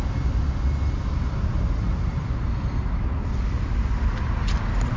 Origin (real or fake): real